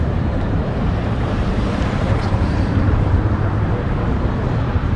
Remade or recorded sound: remade